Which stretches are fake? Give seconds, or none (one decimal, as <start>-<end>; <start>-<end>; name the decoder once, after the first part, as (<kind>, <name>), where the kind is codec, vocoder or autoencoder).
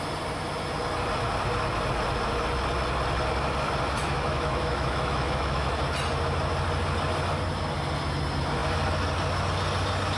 4.0-5.7 (autoencoder, DAC-VAE)